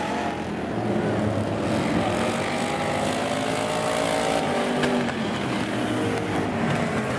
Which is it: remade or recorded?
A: recorded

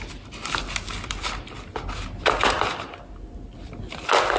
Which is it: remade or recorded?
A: recorded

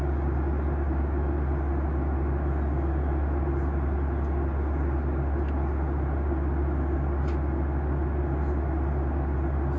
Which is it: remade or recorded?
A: recorded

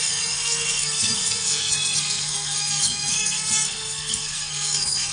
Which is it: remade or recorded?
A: remade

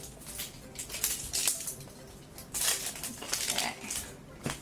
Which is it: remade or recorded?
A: recorded